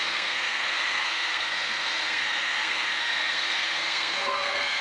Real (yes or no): no